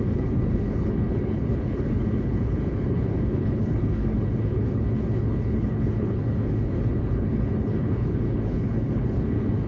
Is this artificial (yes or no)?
yes